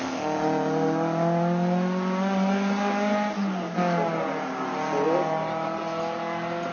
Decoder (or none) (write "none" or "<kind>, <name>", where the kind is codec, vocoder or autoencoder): none